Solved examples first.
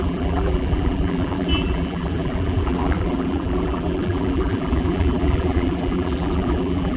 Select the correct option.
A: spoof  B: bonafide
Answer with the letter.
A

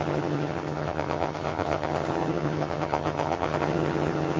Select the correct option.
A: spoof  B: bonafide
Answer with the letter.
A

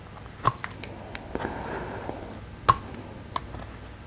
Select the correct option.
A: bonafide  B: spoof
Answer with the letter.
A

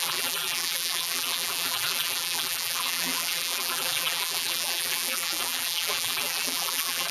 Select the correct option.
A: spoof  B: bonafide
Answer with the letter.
A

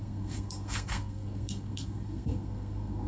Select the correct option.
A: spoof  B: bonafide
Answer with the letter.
A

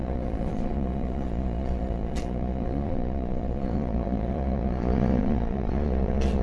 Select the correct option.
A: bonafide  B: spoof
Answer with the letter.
B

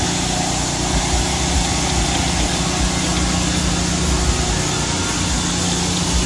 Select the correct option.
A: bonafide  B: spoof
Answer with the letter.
A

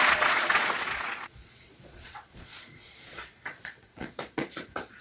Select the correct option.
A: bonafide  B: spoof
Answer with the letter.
B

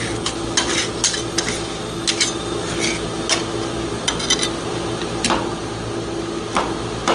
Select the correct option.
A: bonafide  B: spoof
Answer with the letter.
A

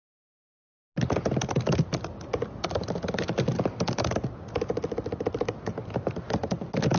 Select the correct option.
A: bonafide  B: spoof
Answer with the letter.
A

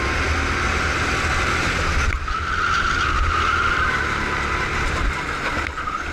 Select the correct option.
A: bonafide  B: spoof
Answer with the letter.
A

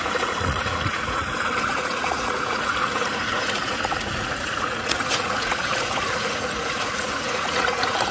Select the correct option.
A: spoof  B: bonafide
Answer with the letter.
A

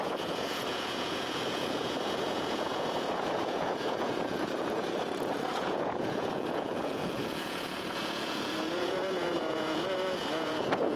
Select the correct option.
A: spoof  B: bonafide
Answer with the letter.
A